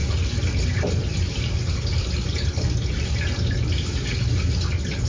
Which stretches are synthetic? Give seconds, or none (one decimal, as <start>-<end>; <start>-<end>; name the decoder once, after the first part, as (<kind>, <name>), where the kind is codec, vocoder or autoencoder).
none